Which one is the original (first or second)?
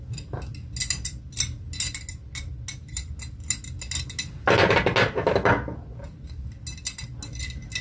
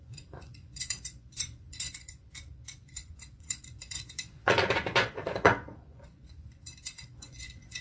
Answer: first